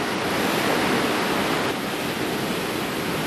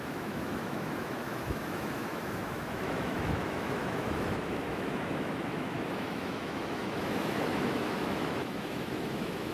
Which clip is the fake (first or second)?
second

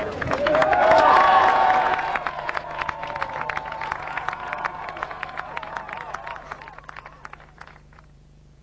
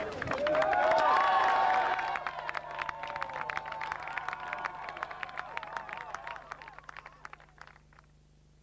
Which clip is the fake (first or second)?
first